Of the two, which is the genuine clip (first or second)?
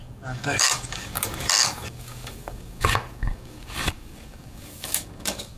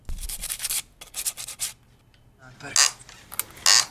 second